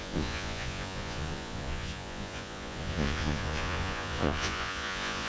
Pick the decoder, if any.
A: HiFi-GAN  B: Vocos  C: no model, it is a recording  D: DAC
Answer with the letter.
B